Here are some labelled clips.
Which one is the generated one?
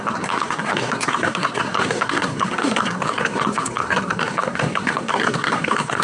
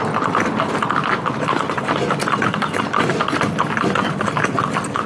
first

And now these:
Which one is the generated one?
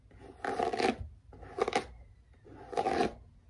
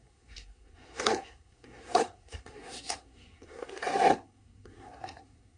second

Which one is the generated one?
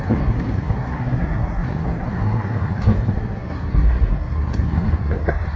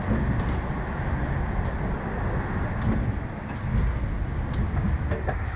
first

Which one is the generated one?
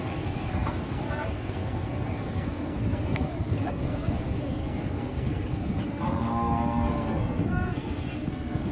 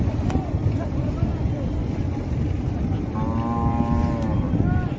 first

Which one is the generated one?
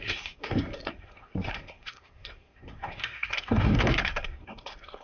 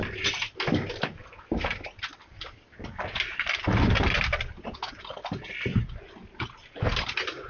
first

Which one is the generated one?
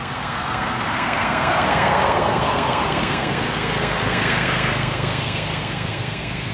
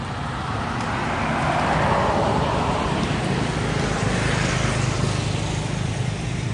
first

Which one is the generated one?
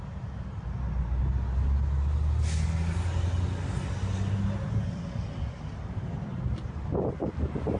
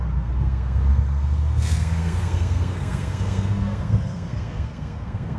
second